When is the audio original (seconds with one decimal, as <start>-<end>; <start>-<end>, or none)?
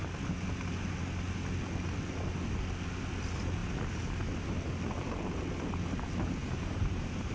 0.0-6.4